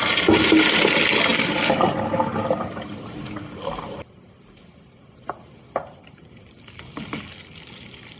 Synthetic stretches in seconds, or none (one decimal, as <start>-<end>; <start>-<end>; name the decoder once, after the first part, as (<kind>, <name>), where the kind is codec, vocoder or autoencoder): none